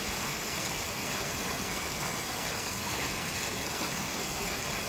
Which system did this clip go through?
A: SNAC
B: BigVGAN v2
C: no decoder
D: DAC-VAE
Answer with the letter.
A